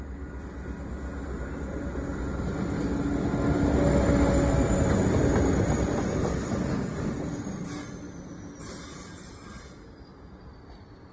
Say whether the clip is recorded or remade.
recorded